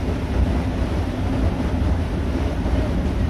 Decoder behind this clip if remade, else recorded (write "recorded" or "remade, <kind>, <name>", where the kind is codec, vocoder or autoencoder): remade, vocoder, BigVGAN v2